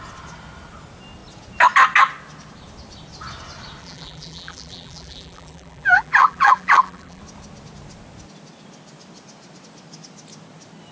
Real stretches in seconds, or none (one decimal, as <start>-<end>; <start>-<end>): 0.0-3.8; 7.2-10.9